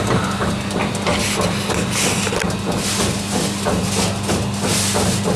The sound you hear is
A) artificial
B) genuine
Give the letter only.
B